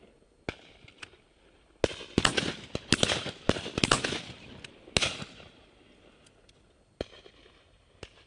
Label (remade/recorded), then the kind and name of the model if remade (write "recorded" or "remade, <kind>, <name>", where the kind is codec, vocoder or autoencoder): recorded